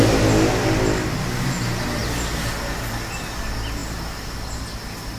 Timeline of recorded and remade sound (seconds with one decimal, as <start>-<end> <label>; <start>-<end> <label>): 0.0-5.2 recorded